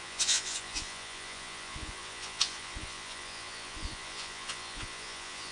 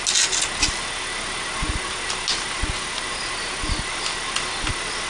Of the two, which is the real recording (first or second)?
second